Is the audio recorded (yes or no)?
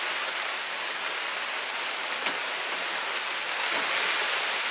yes